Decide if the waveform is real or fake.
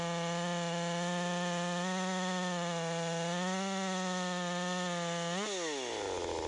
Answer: real